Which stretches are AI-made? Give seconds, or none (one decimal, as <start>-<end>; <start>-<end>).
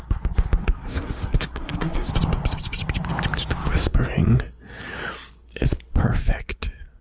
0.6-2.1